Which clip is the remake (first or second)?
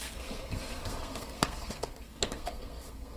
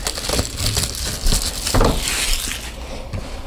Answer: first